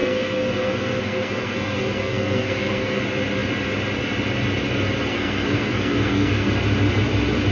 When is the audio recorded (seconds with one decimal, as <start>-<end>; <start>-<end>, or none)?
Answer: 3.0-5.1; 6.5-7.5